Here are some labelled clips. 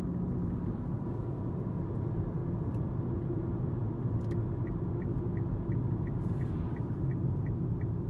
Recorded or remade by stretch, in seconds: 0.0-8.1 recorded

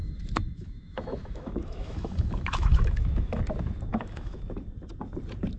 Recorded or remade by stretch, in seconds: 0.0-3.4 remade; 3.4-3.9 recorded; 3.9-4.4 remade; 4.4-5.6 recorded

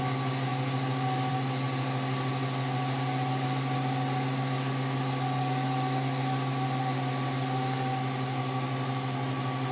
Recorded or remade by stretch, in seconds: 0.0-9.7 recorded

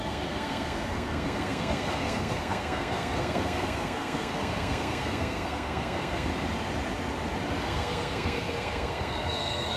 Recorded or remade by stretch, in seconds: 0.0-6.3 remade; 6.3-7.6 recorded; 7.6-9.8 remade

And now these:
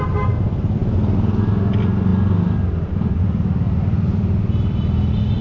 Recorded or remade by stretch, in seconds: 0.0-5.4 recorded